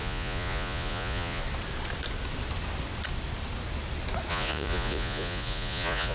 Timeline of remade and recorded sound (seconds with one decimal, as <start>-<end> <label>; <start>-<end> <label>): 0.0-1.4 remade; 1.4-4.3 recorded; 4.3-6.1 remade